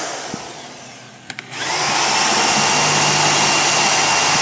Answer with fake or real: real